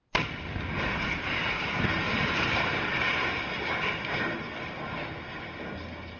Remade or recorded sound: recorded